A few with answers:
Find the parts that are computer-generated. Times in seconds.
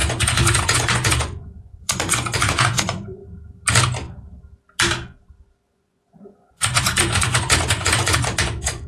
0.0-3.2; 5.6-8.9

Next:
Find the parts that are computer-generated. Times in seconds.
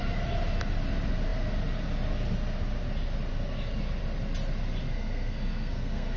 4.9-6.2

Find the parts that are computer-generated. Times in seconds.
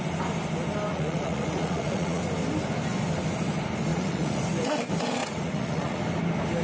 0.9-2.2; 3.9-4.4; 5.2-6.0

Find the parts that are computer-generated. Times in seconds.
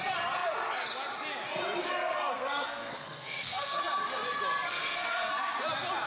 1.8-3.8; 4.7-5.3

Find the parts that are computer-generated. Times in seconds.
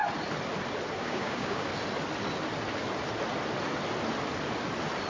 1.0-1.7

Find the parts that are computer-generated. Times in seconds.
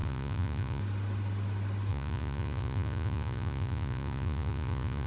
0.0-0.8; 1.9-5.1